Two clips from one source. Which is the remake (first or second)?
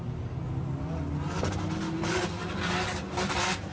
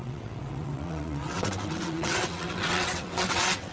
second